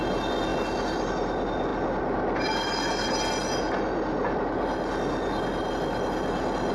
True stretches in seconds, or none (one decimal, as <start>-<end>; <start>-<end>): 0.0-6.7